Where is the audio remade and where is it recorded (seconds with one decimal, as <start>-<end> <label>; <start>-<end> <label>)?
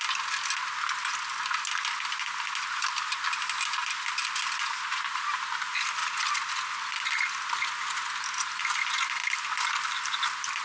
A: 0.0-10.6 recorded